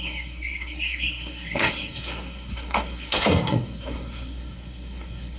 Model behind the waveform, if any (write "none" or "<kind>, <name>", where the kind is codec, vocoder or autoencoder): codec, SNAC